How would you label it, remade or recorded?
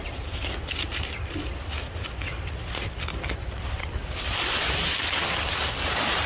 recorded